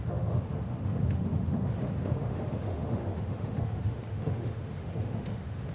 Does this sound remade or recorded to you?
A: remade